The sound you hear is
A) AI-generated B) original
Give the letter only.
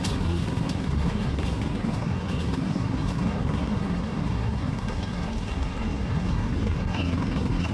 A